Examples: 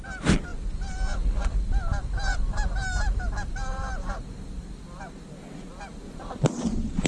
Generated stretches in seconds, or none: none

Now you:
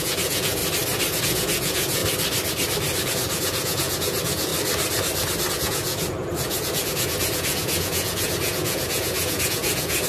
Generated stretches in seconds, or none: 0.0-0.6 (vocoder, Vocos); 1.2-2.0; 3.1-4.5; 5.5-10.1

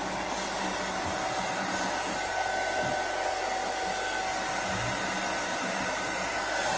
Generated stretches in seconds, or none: none

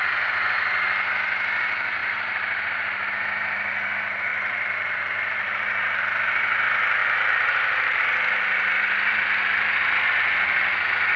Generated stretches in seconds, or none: 2.0-3.1 (vocoder, BigVGAN v2); 4.3-6.0; 7.0-8.0

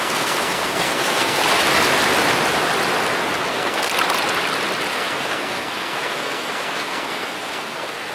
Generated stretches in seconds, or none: 0.0-1.4 (codec, SNAC); 3.5-3.9; 4.9-8.1